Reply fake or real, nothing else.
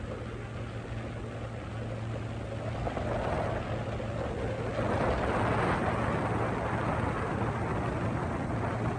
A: real